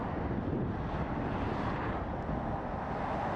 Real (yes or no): yes